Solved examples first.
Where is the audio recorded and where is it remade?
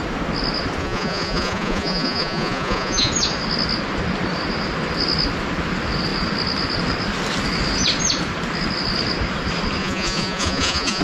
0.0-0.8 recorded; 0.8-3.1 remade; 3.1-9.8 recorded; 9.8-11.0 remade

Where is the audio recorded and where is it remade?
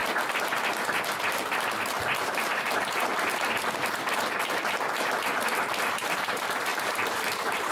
0.0-2.3 recorded; 2.3-3.1 remade; 3.1-5.9 recorded; 5.9-7.7 remade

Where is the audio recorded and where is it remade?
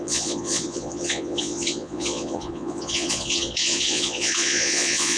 0.0-5.2 remade